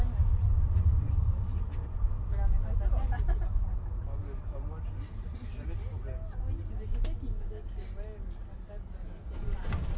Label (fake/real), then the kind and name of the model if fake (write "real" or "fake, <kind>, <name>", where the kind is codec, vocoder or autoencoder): real